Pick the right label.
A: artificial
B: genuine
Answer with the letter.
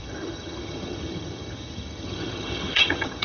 A